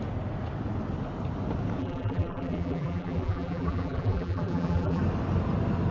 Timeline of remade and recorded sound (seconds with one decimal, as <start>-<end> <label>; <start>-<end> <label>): 0.0-1.8 recorded; 1.8-5.0 remade; 5.0-5.9 recorded